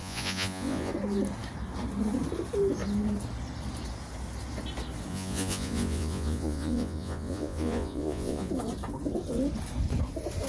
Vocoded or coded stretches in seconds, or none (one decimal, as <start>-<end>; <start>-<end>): 0.0-0.9; 5.1-8.5